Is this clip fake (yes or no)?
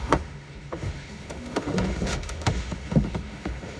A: yes